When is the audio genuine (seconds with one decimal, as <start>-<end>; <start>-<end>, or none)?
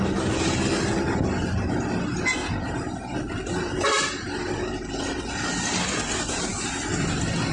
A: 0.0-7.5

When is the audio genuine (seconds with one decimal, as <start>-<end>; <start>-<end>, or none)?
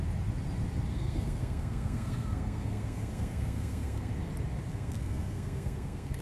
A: 0.0-0.9; 4.1-4.7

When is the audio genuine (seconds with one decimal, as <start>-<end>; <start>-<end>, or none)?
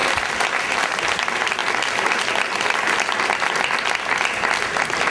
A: 1.0-5.1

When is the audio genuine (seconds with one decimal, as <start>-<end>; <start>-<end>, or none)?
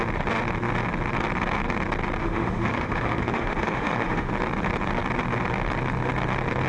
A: 0.0-2.2; 4.3-6.7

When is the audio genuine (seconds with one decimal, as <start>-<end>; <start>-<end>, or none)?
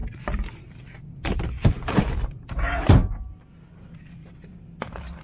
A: 3.0-3.8